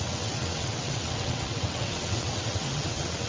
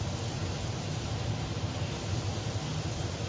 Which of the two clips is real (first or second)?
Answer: second